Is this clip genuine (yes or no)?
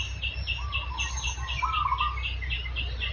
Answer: yes